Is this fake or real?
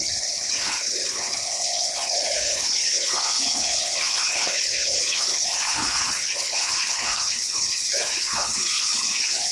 fake